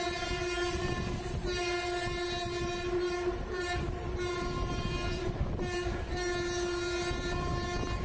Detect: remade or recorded remade